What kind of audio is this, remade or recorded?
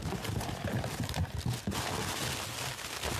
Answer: recorded